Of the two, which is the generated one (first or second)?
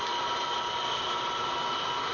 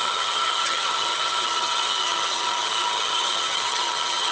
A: second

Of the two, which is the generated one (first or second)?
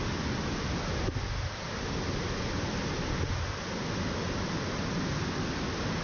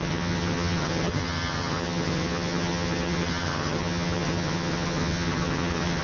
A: second